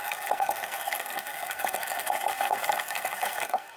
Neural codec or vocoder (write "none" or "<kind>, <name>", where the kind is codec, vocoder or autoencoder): codec, SNAC